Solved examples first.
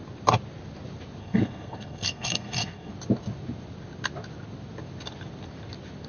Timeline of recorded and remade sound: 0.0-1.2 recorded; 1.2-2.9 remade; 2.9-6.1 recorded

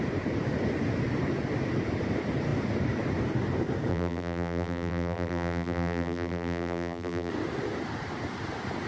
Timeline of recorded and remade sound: 0.0-3.9 recorded; 3.9-7.3 remade; 7.3-8.9 recorded

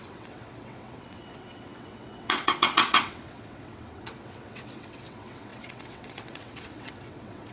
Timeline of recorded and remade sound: 0.0-7.5 remade

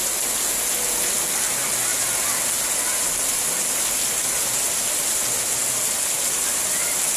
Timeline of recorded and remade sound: 0.0-7.2 recorded